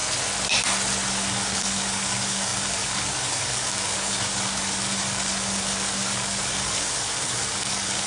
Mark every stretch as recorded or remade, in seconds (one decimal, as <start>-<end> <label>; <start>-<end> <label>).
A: 0.0-1.1 recorded; 1.1-8.1 remade